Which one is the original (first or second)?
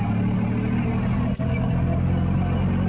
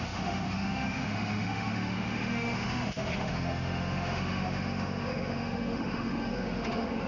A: first